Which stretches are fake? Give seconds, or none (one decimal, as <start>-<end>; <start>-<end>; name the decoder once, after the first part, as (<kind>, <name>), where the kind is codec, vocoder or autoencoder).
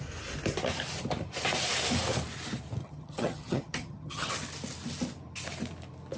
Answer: 2.8-4.3 (vocoder, HiFi-GAN)